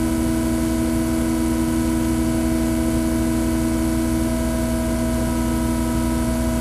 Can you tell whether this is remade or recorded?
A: recorded